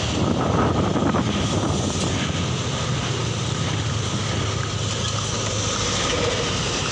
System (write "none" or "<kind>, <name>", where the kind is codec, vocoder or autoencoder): none